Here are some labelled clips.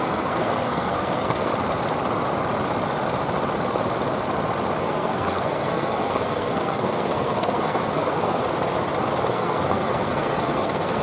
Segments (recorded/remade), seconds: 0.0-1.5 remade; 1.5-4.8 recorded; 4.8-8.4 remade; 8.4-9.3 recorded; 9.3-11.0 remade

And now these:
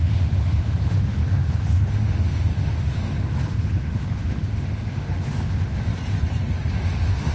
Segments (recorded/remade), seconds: 0.0-5.9 remade; 5.9-6.7 recorded; 6.7-7.3 remade